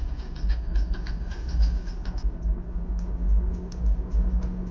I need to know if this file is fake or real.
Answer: real